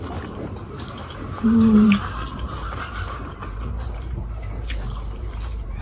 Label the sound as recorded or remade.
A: remade